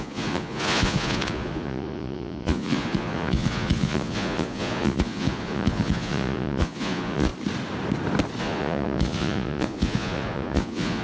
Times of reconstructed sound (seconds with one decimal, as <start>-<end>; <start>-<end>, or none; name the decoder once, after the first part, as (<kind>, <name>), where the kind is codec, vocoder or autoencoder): 0.0-7.3 (vocoder, Vocos); 8.4-11.0